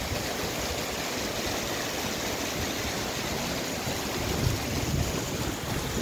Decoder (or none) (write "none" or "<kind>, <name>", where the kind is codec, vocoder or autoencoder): none